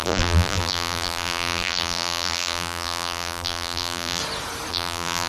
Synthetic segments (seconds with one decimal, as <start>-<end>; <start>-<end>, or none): 0.0-4.2; 4.7-5.3